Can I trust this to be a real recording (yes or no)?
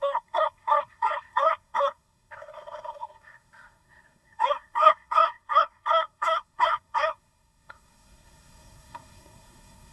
no